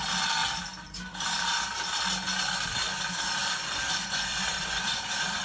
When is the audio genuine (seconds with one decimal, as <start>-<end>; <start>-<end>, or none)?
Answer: 0.0-3.4